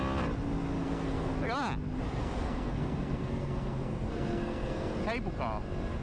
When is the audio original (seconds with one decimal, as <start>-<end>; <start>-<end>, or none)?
0.0-0.8; 1.3-2.2; 5.0-6.0